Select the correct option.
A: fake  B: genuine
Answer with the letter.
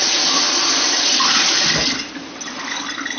B